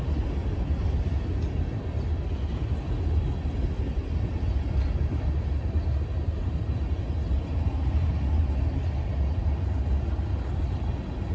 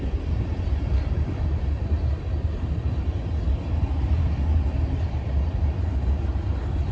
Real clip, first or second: first